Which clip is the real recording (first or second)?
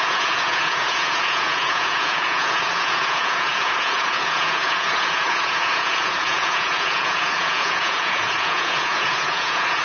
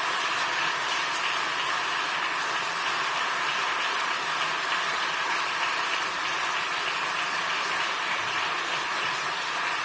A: second